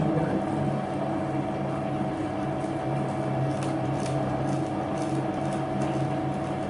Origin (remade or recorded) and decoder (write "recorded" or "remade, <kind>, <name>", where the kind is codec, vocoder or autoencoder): recorded